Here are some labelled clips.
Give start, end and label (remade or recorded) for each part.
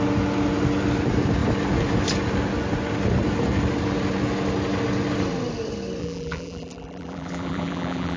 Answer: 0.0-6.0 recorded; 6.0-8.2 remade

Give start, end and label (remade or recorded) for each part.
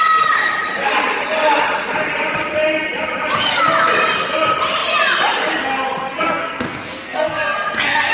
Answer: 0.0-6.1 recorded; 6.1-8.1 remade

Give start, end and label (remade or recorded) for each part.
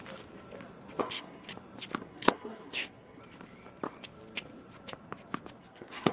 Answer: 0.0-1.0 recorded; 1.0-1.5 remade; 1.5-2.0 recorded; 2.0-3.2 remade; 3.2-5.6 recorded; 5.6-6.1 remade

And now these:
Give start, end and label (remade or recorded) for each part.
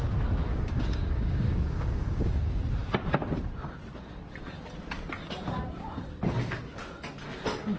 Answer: 0.0-0.5 recorded; 0.5-2.4 remade; 2.4-7.8 recorded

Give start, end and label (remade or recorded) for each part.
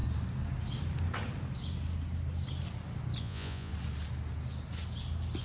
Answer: 0.0-3.2 recorded; 3.2-3.7 remade; 3.7-5.4 recorded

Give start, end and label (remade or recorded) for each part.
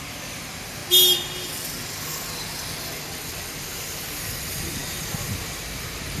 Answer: 0.0-0.8 remade; 0.8-3.6 recorded; 3.6-6.2 remade